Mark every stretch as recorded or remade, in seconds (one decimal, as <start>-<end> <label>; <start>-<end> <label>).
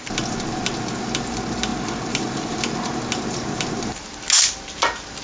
0.0-5.2 recorded